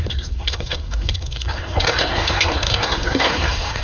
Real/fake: fake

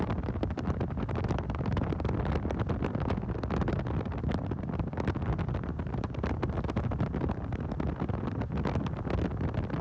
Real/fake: real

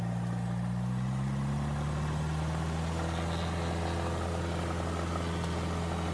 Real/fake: real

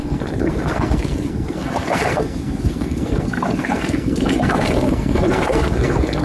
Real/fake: fake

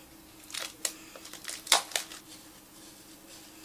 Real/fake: real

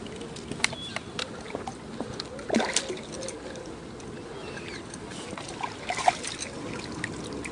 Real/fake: real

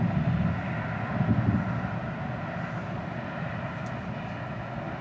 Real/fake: real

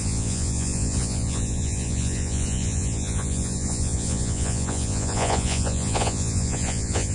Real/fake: fake